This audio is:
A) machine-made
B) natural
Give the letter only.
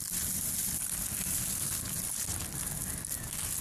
B